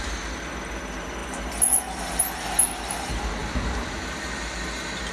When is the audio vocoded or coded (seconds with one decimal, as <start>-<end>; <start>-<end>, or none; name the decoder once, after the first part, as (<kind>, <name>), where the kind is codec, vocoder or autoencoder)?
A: none